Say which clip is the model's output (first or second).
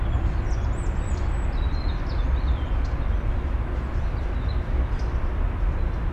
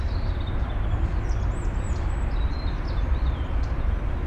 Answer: second